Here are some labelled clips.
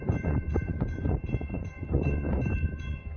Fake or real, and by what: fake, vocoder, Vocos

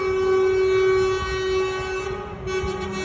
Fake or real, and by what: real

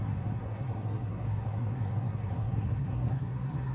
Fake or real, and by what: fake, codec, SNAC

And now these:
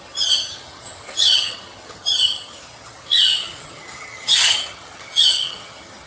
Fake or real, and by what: fake, vocoder, HiFi-GAN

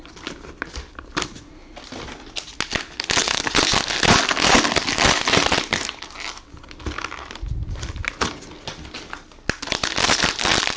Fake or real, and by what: real